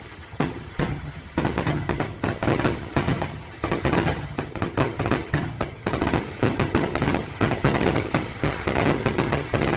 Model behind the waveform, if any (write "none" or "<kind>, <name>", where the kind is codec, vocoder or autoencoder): vocoder, HiFi-GAN